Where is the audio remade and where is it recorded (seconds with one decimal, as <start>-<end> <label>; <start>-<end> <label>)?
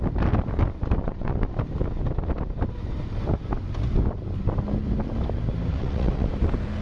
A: 0.0-1.0 recorded; 1.0-1.5 remade; 1.5-5.7 recorded; 5.7-6.3 remade; 6.3-6.8 recorded